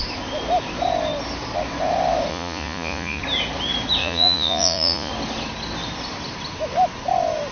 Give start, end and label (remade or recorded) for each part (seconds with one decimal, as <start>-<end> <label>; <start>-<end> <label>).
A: 0.0-2.3 recorded; 2.3-3.2 remade; 3.2-4.0 recorded; 4.0-5.1 remade; 5.1-7.5 recorded